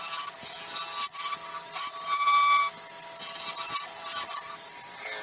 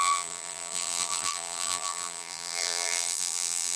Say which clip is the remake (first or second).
second